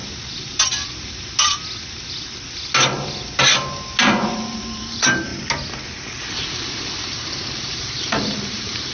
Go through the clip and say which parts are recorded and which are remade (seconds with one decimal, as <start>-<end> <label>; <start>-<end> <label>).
0.0-4.3 recorded; 4.3-5.3 remade; 5.3-6.2 recorded; 6.2-8.9 remade